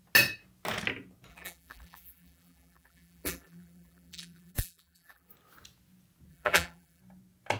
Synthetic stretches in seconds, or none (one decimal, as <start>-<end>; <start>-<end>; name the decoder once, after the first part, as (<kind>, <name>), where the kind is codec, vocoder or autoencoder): 1.3-5.3 (vocoder, BigVGAN v2); 6.3-7.0

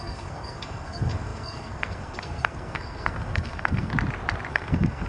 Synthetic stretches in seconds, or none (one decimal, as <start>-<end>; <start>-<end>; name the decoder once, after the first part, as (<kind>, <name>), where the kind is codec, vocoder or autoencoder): 0.0-3.9 (codec, SNAC); 4.5-5.1

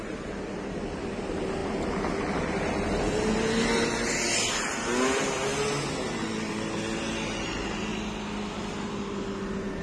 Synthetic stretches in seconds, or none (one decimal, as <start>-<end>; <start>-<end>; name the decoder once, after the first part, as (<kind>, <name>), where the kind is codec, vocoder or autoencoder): none